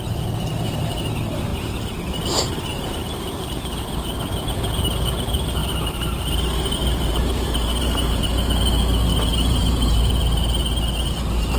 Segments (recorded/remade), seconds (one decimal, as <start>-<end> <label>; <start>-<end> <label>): 0.0-1.5 recorded; 1.5-3.5 remade; 3.5-5.6 recorded; 5.6-8.2 remade; 8.2-9.3 recorded; 9.3-10.1 remade; 10.1-11.6 recorded